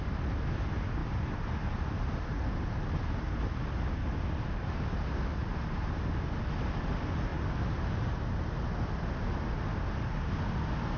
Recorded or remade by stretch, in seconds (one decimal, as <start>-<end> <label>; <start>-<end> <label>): 0.0-1.0 recorded; 1.0-4.3 remade; 4.3-11.0 recorded

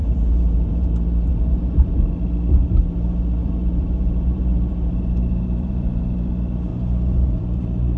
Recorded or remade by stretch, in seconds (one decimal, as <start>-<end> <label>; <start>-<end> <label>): 0.0-0.9 remade; 0.9-1.3 recorded; 1.3-1.9 remade; 1.9-3.4 recorded; 3.4-6.3 remade; 6.3-6.7 recorded; 6.7-8.0 remade

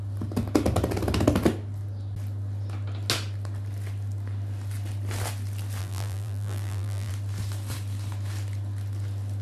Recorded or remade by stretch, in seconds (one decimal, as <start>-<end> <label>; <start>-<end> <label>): 0.0-5.8 recorded; 5.8-7.1 remade; 7.1-9.4 recorded

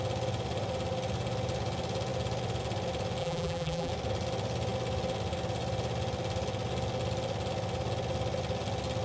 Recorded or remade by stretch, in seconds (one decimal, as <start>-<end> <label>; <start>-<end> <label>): 0.0-3.2 recorded; 3.2-3.9 remade; 3.9-9.0 recorded

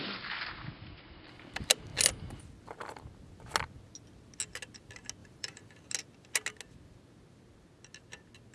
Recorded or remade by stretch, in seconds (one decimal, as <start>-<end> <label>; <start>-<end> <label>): 0.0-5.2 recorded; 5.2-5.9 remade; 5.9-8.5 recorded

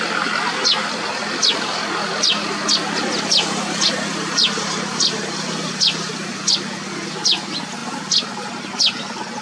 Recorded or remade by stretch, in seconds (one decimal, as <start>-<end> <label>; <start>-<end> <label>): 0.0-9.4 recorded